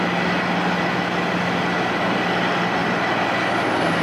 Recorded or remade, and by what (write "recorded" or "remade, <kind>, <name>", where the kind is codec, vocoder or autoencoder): recorded